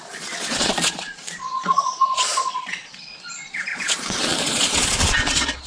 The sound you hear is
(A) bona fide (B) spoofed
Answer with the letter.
B